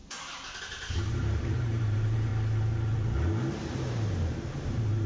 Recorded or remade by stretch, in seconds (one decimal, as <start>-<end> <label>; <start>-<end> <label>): 0.0-0.6 recorded; 0.6-2.3 remade; 2.3-3.5 recorded; 3.5-5.1 remade